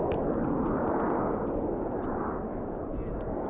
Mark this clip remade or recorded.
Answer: recorded